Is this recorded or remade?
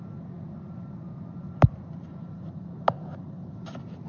recorded